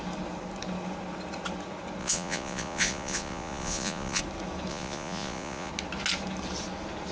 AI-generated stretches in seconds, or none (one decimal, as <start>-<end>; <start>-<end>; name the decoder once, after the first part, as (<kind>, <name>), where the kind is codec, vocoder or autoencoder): 2.0-4.2 (vocoder, Vocos); 4.7-5.7